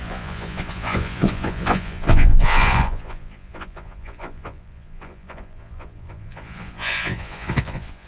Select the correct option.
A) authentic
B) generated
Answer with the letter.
B